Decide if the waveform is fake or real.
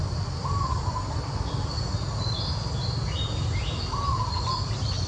real